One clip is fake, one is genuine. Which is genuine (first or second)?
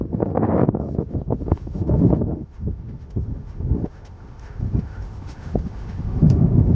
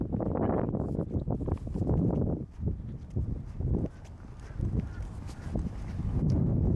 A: second